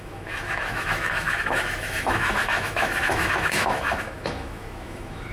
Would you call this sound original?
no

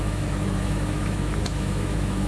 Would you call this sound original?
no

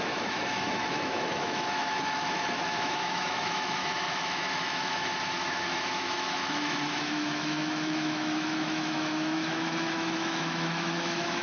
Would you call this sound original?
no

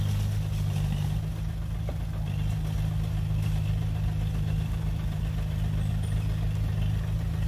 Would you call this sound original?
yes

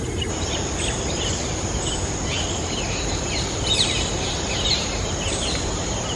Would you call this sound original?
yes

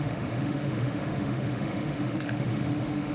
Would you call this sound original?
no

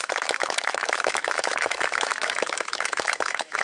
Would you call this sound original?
no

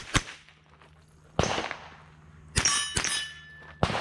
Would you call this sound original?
yes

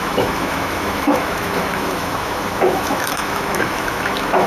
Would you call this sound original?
no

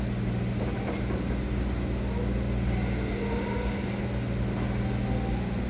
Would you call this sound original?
yes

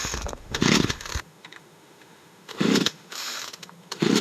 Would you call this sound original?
no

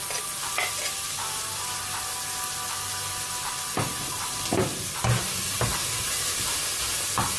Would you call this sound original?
yes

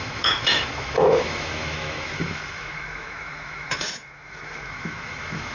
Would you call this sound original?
no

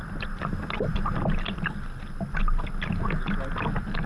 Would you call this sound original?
yes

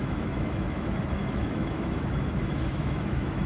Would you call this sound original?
no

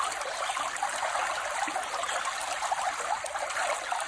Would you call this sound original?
yes